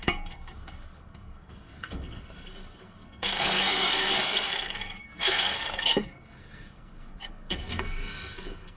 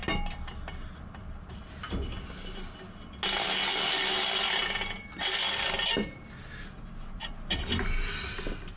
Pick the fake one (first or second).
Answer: first